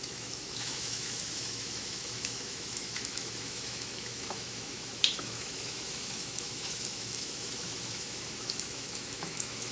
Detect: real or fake fake